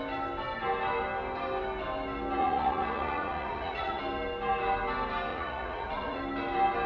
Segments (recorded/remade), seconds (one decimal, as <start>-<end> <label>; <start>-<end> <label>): 0.0-2.4 recorded; 2.4-4.0 remade; 4.0-5.3 recorded; 5.3-6.2 remade; 6.2-6.9 recorded